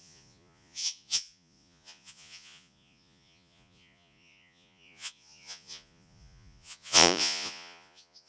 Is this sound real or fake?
fake